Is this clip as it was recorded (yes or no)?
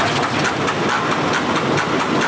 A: yes